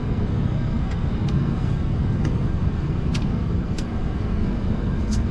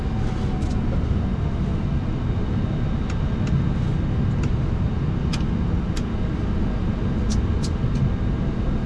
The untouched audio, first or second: second